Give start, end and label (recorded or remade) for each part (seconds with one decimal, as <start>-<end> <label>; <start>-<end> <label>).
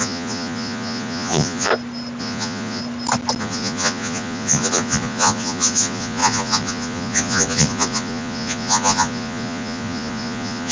0.0-1.7 remade; 1.7-2.2 recorded; 2.2-2.8 remade; 2.8-3.4 recorded; 3.4-10.7 remade